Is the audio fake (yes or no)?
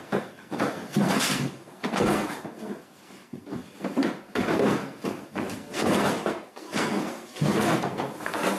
yes